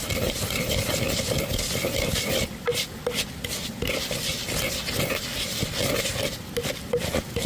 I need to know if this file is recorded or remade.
recorded